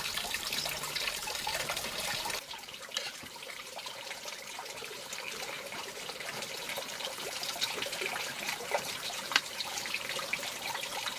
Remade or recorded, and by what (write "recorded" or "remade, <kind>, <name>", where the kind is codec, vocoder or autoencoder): remade, vocoder, BigVGAN v2